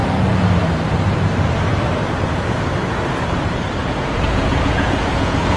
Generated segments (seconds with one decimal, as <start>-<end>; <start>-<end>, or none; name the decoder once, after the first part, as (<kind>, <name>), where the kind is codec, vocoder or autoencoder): 3.8-5.6 (vocoder, Vocos)